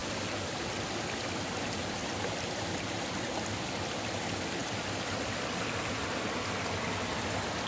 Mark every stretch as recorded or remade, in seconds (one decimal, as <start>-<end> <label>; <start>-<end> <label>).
0.0-7.7 recorded